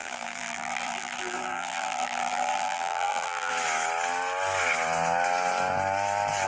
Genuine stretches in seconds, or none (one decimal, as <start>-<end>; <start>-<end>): 3.5-6.5